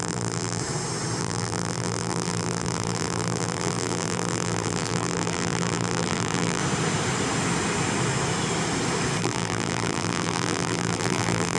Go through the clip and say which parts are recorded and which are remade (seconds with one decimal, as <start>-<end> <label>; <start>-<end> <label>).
0.0-0.6 remade; 0.6-1.2 recorded; 1.2-6.6 remade; 6.6-9.2 recorded; 9.2-11.6 remade